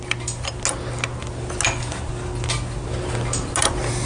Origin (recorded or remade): recorded